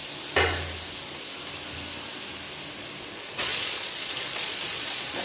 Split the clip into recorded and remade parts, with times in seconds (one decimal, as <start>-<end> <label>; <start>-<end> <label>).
0.0-3.1 recorded; 3.1-5.2 remade